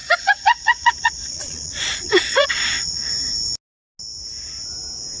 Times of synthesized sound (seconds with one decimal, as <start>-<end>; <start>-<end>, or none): 0.0-3.1